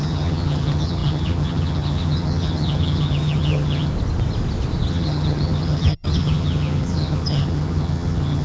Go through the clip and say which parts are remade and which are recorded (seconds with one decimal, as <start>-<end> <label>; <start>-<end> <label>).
0.0-3.9 remade; 3.9-4.9 recorded; 4.9-8.4 remade